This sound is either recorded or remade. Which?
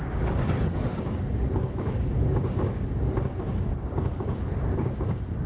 remade